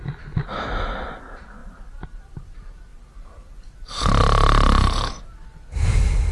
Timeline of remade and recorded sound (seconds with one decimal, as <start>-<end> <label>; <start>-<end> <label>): 0.0-1.6 recorded; 1.6-2.2 remade; 2.2-2.9 recorded; 2.9-4.2 remade; 4.2-6.3 recorded